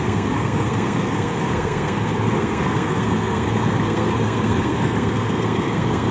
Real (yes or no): no